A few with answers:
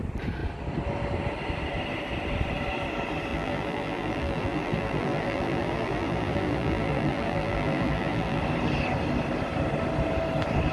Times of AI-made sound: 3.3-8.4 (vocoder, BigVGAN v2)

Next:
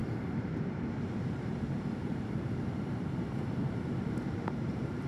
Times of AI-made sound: 0.0-5.1 (vocoder, BigVGAN v2)

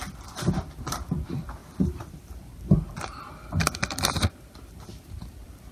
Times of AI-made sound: 0.0-5.7 (vocoder, BigVGAN v2)

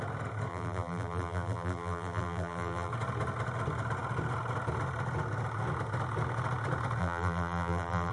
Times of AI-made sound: 0.5-2.9 (vocoder, BigVGAN v2); 7.0-8.1

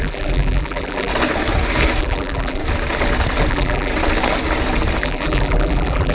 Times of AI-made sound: 0.0-1.1 (vocoder, BigVGAN v2); 2.0-2.6; 3.5-3.9; 5.0-6.1

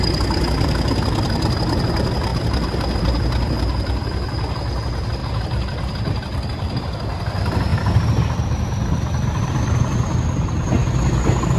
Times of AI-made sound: 2.3-3.0 (vocoder, BigVGAN v2); 5.2-6.8; 7.7-9.8

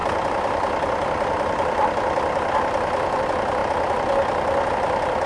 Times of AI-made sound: 0.0-3.2 (vocoder, BigVGAN v2); 3.6-4.7

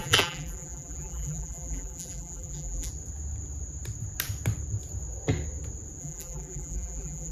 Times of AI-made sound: 0.0-2.9 (vocoder, BigVGAN v2); 6.0-7.3